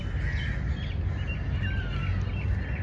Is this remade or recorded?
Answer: recorded